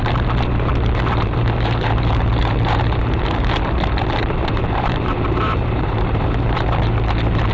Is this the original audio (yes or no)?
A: no